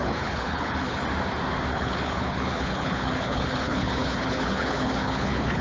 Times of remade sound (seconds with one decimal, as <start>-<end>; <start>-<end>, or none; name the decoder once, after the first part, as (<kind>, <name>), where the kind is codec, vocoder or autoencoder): 0.0-1.0 (codec, HILCodec); 1.7-5.6